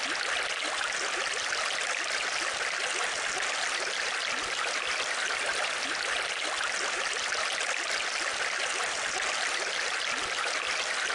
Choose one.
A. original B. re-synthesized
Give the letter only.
A